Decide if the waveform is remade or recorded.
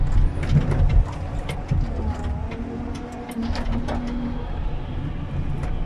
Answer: recorded